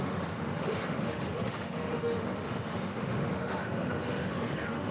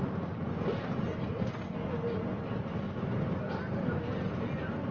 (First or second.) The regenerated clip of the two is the first